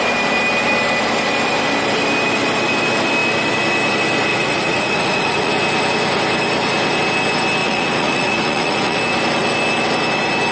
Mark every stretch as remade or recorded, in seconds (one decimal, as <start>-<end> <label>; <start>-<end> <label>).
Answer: 0.0-4.3 recorded; 4.3-5.5 remade; 5.5-7.6 recorded; 7.6-9.0 remade; 9.0-10.5 recorded